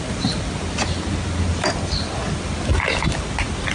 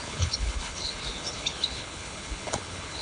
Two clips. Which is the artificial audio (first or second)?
second